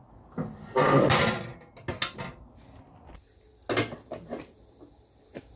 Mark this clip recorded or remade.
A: recorded